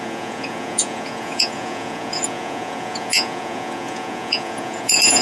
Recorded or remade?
remade